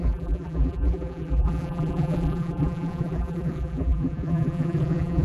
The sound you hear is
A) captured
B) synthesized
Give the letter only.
B